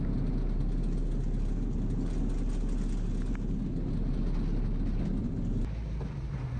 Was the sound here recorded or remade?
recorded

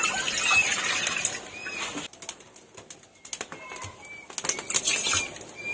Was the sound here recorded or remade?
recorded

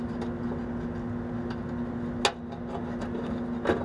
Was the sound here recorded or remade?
recorded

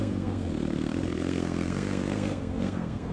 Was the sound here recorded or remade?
remade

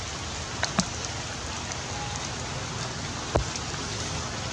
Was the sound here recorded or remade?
recorded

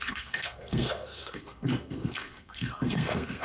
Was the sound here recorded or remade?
remade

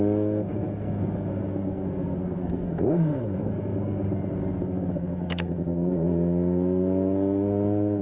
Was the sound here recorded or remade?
remade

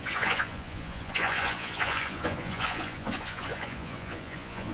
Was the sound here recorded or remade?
remade